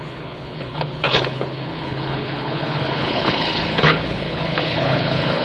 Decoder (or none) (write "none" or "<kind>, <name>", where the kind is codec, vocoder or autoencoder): codec, HILCodec